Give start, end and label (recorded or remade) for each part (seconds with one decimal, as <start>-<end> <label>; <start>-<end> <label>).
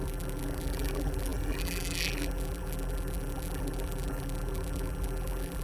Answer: 0.0-5.6 remade